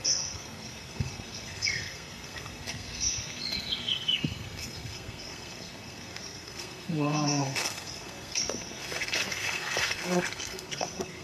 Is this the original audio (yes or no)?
no